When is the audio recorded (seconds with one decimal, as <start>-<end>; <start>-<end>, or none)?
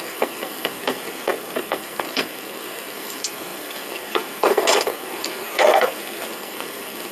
none